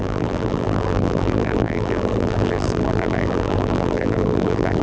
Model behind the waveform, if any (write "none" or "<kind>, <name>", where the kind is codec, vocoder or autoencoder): vocoder, BigVGAN v2